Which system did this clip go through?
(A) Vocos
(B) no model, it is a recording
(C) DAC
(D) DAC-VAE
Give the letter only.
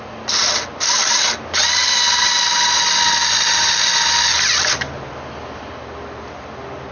B